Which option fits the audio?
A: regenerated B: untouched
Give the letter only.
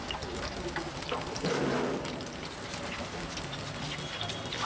B